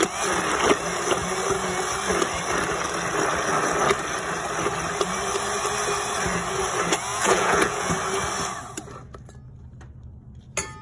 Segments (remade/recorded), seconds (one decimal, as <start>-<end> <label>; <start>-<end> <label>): 0.0-7.1 recorded; 7.1-7.9 remade; 7.9-10.8 recorded